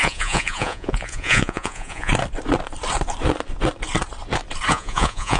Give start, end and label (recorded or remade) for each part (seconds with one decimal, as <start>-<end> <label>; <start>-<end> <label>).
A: 0.0-2.1 remade; 2.1-4.7 recorded; 4.7-5.4 remade